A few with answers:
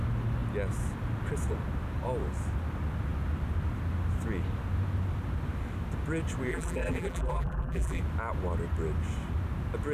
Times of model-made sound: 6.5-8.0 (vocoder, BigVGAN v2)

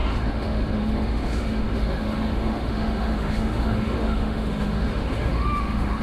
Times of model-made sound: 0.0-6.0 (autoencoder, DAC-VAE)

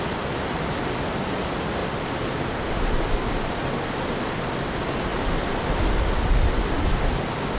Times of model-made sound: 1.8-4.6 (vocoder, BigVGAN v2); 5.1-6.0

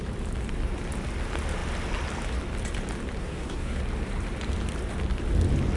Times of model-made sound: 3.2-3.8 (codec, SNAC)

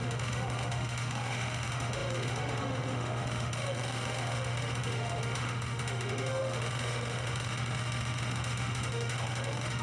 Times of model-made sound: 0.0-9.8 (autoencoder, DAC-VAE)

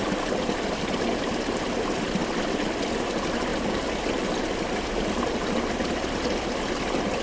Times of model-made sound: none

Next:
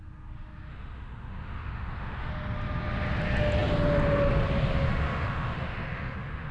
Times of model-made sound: 0.7-2.3 (autoencoder, DAC-VAE); 4.9-6.5

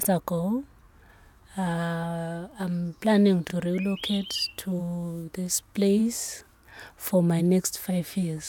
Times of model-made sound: 1.1-3.5 (autoencoder, DAC-VAE); 4.8-6.0; 7.4-8.5